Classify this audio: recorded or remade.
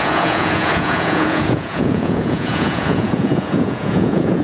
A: remade